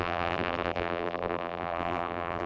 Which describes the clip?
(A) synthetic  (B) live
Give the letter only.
A